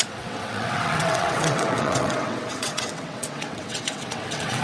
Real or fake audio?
fake